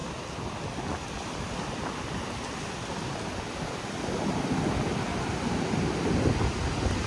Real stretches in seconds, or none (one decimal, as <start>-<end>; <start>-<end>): 0.0-7.1